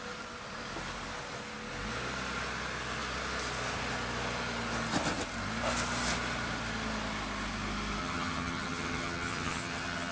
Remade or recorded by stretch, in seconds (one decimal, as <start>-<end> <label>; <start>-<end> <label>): 0.0-8.0 recorded; 8.0-10.1 remade